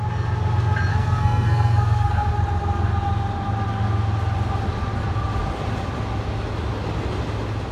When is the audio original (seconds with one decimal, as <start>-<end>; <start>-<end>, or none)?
0.0-0.9; 2.3-7.7